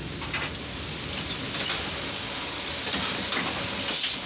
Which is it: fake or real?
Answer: real